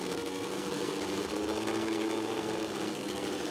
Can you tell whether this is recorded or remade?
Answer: remade